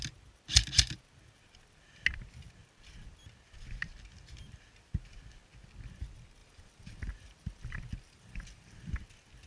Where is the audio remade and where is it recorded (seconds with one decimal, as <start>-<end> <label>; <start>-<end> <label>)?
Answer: 0.0-6.4 recorded; 6.4-8.9 remade; 8.9-9.5 recorded

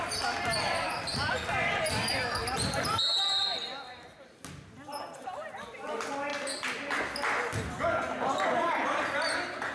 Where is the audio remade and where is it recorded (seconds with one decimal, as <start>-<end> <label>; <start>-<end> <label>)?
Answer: 0.0-9.7 recorded

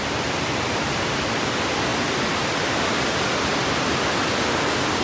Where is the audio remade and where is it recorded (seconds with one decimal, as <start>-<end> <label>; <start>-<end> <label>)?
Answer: 0.0-3.5 recorded; 3.5-4.2 remade; 4.2-5.0 recorded

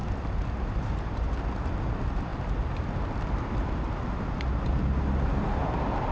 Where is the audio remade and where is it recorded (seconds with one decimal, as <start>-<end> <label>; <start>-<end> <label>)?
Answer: 0.0-1.3 remade; 1.3-6.1 recorded

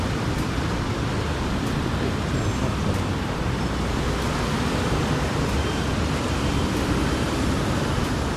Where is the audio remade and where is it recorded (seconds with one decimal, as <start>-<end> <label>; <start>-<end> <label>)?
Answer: 0.0-0.9 remade; 0.9-4.7 recorded; 4.7-8.4 remade

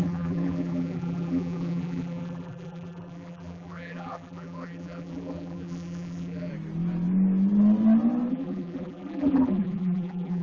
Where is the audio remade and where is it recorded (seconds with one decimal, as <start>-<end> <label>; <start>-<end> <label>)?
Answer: 0.0-6.5 remade; 6.5-8.3 recorded; 8.3-10.4 remade